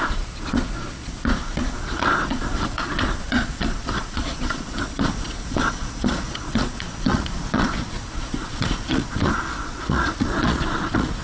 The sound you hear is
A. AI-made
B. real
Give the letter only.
A